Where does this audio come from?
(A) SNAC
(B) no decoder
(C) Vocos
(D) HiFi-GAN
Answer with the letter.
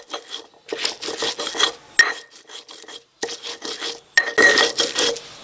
B